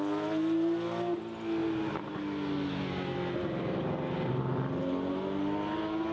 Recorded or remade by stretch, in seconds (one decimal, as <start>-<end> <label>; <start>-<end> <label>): 0.0-6.1 recorded